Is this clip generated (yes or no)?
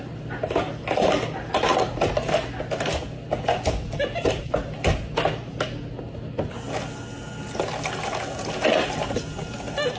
no